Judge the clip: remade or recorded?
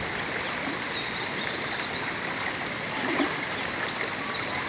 recorded